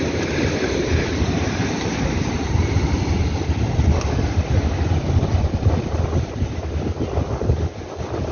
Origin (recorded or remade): recorded